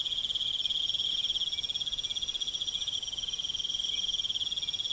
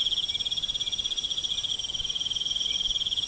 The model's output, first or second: second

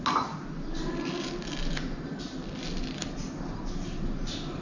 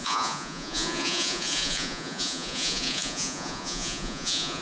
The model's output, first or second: second